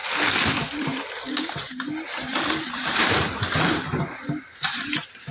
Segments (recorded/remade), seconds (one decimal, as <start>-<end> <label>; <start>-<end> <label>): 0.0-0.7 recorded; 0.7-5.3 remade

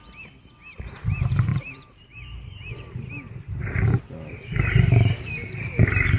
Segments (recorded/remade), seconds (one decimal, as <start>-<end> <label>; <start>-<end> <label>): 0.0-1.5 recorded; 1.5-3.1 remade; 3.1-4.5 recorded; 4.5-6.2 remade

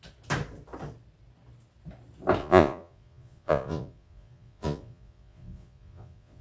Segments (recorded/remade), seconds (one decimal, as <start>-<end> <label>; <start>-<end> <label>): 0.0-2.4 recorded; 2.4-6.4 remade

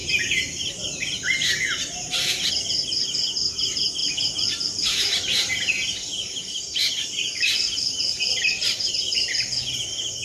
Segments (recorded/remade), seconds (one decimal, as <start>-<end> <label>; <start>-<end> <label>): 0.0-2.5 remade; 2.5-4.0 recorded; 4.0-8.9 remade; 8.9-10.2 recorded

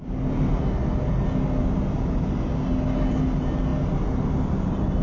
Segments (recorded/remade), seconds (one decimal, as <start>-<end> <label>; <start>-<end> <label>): 0.0-5.0 recorded